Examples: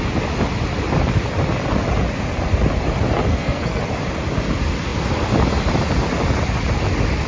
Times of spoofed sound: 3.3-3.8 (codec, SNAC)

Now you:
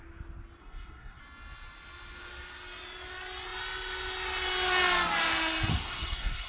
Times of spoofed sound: 0.6-1.2 (codec, SNAC); 5.7-6.5

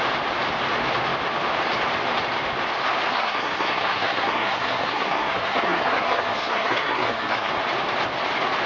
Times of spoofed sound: 3.1-7.5 (codec, SNAC)

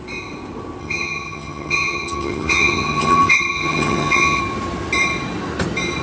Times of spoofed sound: 0.8-4.4 (vocoder, HiFi-GAN)

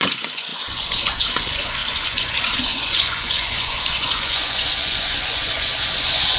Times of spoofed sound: 0.0-6.4 (vocoder, Vocos)

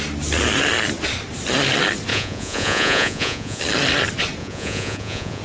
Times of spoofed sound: 2.1-3.6 (vocoder, Vocos); 4.4-5.4

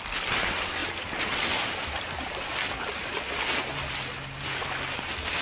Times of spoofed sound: none